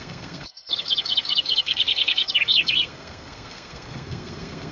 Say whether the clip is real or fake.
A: fake